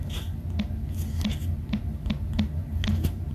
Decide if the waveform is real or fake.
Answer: real